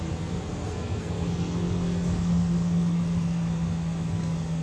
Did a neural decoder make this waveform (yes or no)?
yes